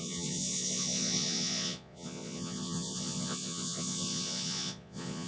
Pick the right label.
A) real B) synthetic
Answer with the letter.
B